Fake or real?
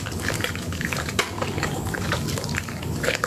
fake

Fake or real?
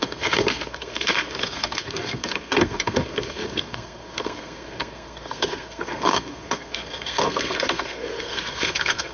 fake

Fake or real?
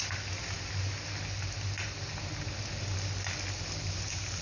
real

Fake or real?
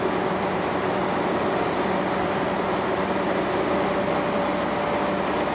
real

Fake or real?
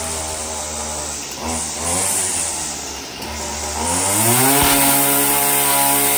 real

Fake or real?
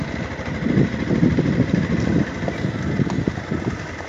real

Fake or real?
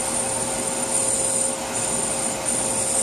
real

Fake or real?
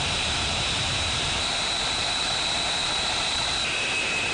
fake